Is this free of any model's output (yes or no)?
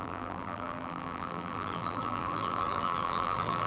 no